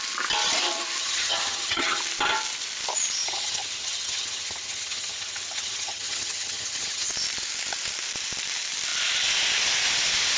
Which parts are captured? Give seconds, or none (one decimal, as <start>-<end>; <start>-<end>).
0.0-1.0; 2.0-3.2; 7.1-10.4